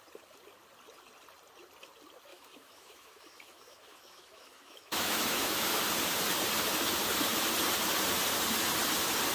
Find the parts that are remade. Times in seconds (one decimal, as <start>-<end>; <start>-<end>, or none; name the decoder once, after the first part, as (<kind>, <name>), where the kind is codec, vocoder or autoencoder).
2.3-5.8 (autoencoder, DAC-VAE)